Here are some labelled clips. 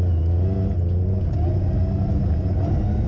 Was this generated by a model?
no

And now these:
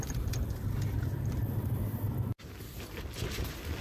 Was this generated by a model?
no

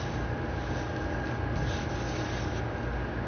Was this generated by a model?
no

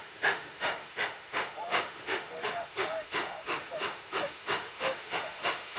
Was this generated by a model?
yes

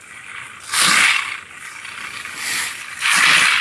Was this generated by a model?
no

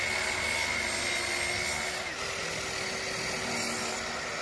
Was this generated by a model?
no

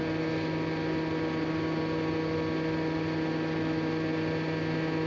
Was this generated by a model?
no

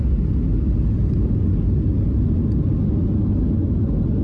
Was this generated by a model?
no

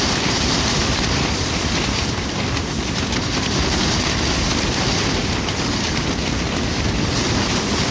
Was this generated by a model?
no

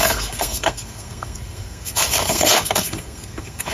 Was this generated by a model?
yes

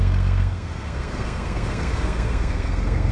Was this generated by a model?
yes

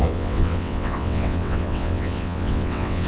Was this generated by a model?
yes